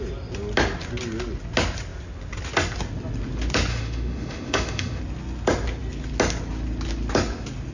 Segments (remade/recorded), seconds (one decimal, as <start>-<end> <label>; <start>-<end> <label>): 0.0-3.7 recorded; 3.7-5.0 remade; 5.0-7.7 recorded

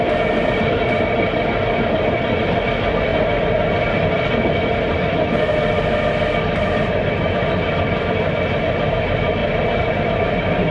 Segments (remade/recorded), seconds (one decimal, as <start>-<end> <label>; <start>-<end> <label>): 0.0-10.7 recorded